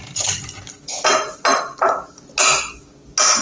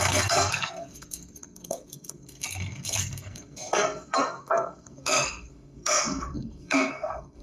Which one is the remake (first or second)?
second